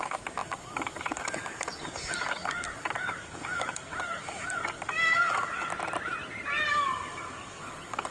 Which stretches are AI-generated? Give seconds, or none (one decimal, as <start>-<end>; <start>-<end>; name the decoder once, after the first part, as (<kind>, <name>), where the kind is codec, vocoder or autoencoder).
0.0-5.7 (codec, DAC); 6.7-8.1